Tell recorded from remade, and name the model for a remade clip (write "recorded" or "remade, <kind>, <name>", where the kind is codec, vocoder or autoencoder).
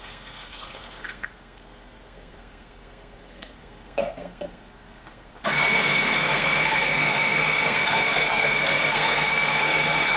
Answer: remade, codec, SNAC